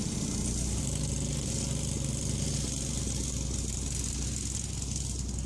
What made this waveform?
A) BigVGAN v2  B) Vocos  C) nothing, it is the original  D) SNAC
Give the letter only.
C